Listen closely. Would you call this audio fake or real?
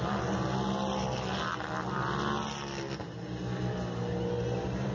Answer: real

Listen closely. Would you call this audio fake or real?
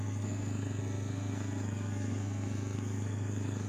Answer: fake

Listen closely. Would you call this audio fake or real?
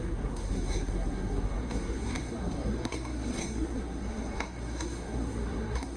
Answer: fake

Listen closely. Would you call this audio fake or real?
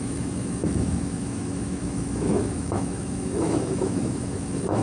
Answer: fake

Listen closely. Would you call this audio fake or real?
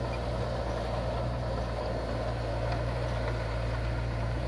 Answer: real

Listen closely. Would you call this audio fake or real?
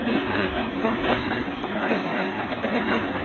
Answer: fake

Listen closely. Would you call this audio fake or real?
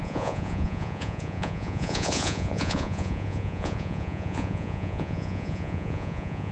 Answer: fake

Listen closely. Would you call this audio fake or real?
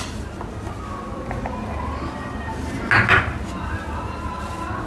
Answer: real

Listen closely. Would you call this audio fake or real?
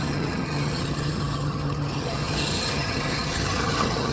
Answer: fake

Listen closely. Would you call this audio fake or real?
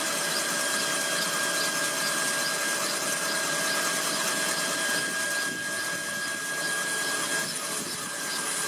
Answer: real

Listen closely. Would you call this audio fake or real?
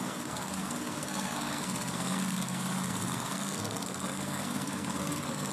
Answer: fake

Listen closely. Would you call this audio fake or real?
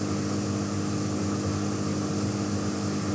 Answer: real